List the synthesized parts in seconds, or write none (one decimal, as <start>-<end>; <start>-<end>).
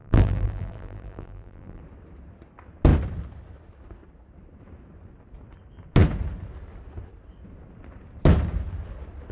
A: 0.0-1.8